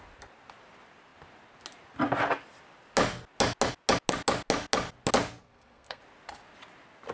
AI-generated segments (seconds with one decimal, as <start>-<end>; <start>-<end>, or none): 5.4-6.0